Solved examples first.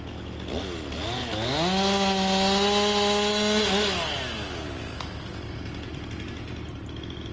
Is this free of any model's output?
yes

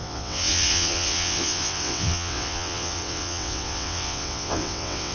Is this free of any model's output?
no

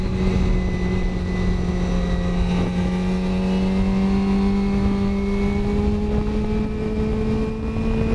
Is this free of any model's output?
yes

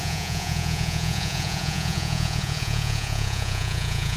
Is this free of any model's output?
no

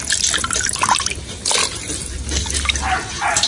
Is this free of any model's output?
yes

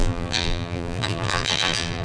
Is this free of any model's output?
no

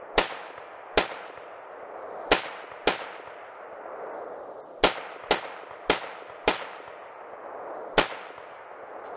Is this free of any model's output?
yes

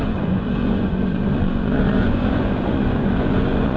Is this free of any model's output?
no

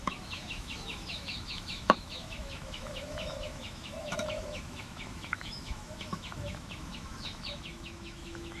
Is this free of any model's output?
no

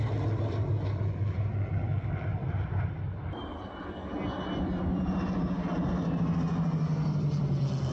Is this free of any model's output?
yes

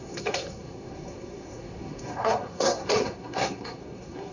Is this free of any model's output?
no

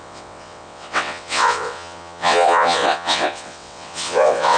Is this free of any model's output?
no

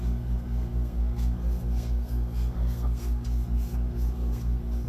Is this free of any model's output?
no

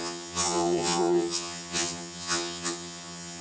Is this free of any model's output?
no